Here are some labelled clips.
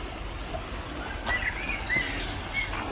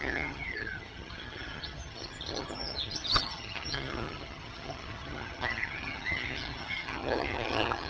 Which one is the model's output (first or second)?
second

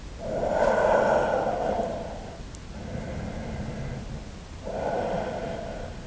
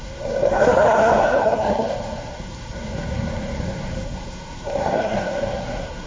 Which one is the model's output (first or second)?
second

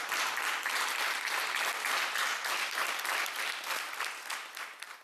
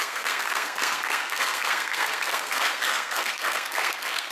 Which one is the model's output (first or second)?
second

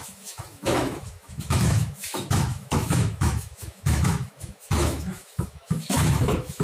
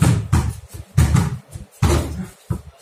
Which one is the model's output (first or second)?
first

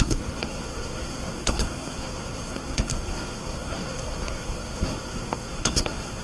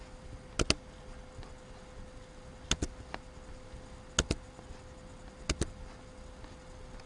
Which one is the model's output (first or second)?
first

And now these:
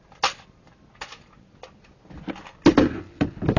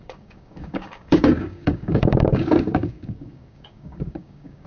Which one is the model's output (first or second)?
second